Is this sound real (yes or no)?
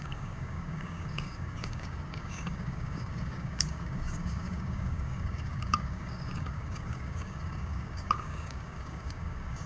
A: no